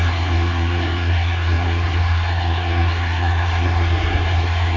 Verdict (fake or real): fake